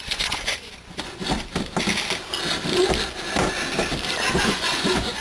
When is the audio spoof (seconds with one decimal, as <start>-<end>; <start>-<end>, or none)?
0.0-1.2; 4.3-5.2